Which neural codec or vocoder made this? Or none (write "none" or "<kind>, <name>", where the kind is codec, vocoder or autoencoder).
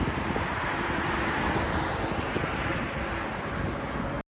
none